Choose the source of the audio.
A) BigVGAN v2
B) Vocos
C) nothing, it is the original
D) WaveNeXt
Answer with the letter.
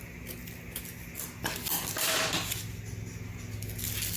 C